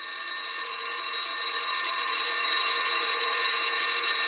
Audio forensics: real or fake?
fake